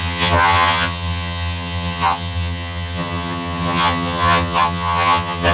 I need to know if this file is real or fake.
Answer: fake